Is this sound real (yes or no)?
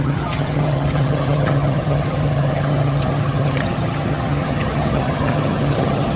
no